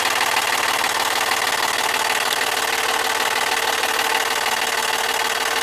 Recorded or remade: recorded